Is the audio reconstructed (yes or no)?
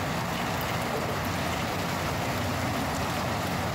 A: no